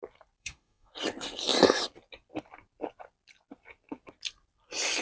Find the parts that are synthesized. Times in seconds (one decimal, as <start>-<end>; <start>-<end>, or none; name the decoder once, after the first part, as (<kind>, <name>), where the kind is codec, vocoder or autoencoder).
0.4-0.9 (autoencoder, DAC-VAE)